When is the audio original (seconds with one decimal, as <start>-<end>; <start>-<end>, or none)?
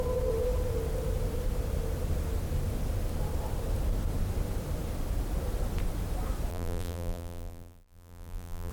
0.0-6.5